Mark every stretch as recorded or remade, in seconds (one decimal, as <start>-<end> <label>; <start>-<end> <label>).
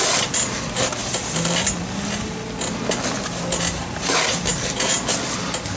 0.0-5.8 recorded